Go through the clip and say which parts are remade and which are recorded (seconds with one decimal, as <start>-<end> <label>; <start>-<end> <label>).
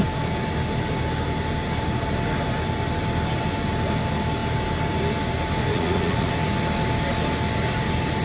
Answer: 0.0-5.7 recorded; 5.7-6.3 remade; 6.3-8.2 recorded